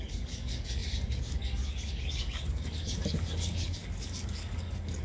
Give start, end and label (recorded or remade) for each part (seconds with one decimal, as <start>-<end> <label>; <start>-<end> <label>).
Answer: 0.0-5.0 remade